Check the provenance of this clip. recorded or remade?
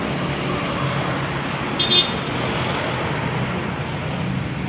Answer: recorded